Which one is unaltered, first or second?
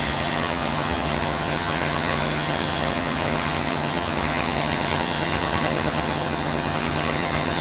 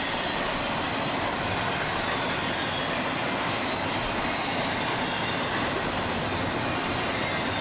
second